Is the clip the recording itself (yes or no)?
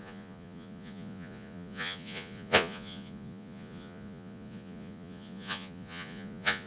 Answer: no